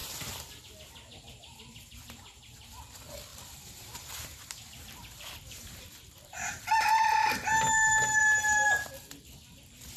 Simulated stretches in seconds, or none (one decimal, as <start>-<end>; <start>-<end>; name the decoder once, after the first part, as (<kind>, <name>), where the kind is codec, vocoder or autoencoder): 0.0-0.6 (vocoder, BigVGAN v2); 3.3-6.6